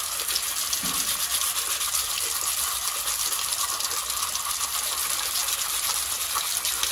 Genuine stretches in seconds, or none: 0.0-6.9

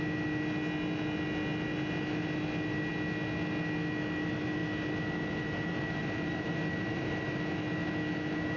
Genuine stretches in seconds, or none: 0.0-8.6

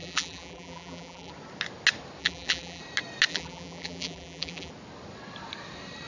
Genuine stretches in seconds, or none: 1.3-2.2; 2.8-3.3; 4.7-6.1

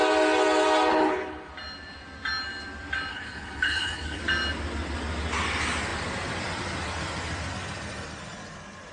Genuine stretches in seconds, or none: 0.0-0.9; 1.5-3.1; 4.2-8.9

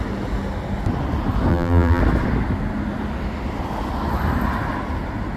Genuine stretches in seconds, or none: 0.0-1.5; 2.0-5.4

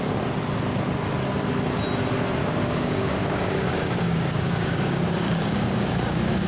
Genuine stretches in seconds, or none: 0.0-2.4